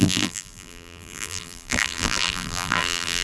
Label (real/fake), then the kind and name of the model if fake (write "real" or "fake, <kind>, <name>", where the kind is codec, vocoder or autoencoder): fake, vocoder, BigVGAN v2